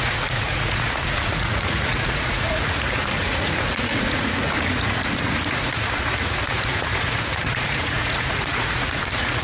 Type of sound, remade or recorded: remade